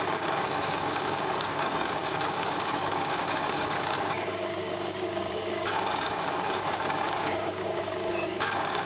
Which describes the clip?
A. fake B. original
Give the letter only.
A